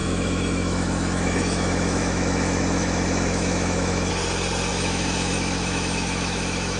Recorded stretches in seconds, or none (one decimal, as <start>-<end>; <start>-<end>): 4.1-4.7